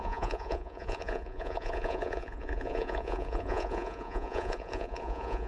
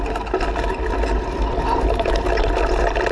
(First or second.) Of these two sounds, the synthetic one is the first